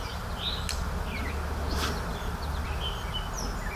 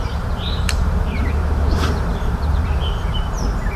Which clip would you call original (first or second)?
first